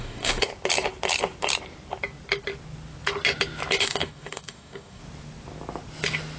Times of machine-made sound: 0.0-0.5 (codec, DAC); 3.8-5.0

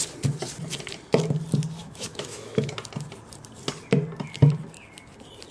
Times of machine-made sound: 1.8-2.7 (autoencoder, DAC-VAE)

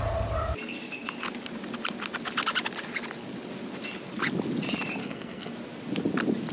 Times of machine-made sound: 5.0-5.5 (codec, SNAC)

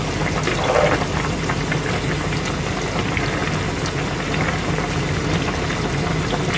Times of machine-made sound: none

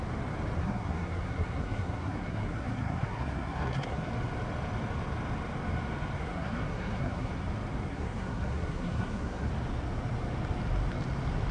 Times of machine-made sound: 0.6-4.1 (codec, SNAC); 6.2-7.3; 7.9-9.5